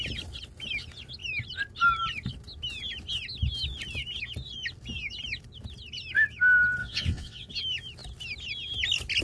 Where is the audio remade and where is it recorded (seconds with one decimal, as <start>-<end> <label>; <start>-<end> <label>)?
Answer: 0.0-6.8 recorded; 6.8-7.5 remade; 7.5-9.2 recorded